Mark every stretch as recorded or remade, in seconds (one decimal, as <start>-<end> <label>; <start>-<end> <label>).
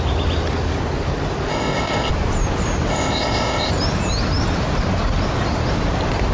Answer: 0.0-1.5 recorded; 1.5-2.1 remade; 2.1-2.9 recorded; 2.9-3.7 remade; 3.7-6.3 recorded